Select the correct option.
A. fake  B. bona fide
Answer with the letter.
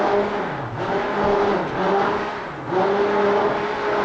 B